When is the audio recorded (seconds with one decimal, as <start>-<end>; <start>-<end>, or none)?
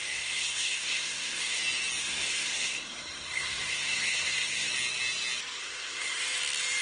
1.6-2.0; 4.7-5.6; 6.2-6.8